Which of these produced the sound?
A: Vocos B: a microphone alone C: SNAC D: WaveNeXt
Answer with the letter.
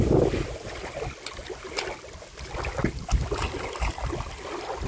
B